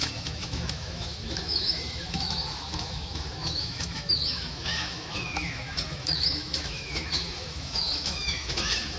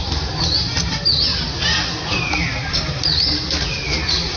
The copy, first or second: first